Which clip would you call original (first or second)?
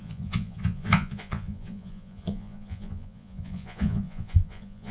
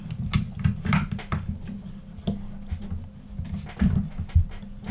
second